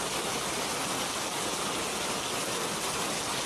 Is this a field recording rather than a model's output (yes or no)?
yes